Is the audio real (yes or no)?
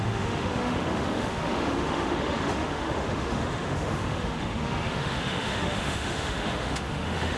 no